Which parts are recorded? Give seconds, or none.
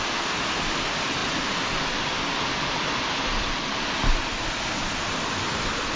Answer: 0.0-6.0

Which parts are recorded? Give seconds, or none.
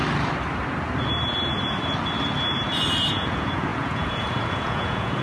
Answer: 0.0-3.1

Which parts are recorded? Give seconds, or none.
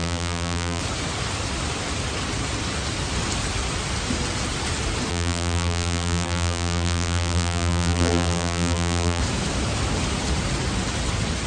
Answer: 0.8-5.1; 9.2-11.5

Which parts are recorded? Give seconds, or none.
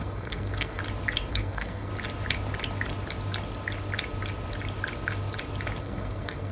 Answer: 0.8-1.3; 1.9-5.8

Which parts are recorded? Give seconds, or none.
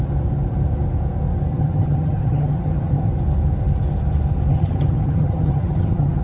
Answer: 0.0-1.5; 3.1-4.5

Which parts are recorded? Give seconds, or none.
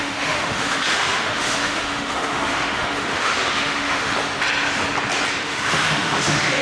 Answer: 4.1-5.3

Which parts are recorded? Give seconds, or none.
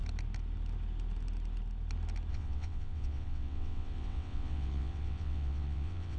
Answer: 0.0-2.3